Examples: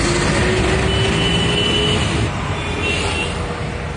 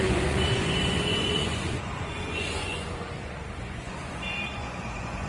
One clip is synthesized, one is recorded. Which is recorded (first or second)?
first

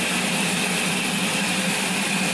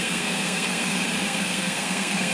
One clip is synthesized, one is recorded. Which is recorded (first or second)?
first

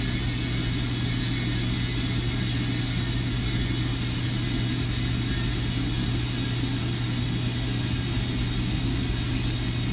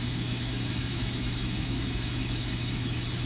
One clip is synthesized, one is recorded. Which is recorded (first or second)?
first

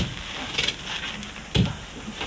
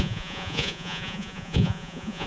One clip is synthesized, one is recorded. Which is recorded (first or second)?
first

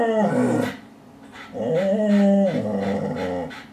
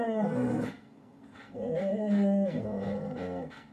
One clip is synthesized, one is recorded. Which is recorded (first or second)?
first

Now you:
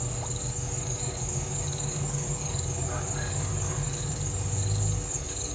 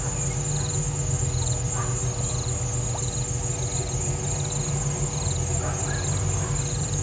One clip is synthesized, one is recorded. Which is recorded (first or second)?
second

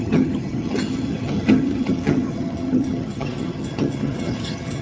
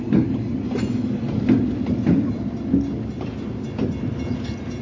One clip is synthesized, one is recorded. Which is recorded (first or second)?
second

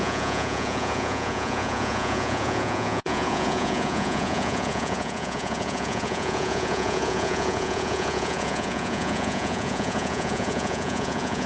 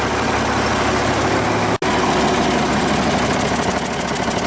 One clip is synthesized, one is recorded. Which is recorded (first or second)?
second